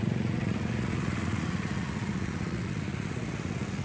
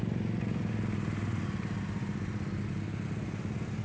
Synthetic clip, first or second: first